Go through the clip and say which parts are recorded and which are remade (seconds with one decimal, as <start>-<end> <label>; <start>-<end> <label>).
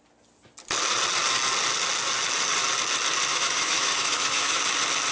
0.0-3.3 recorded; 3.3-4.6 remade; 4.6-5.1 recorded